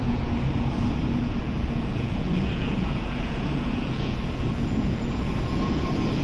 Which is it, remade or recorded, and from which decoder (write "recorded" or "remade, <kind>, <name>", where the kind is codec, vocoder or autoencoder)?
remade, vocoder, Vocos